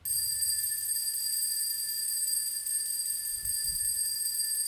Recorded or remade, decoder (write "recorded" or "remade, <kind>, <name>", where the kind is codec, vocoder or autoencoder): recorded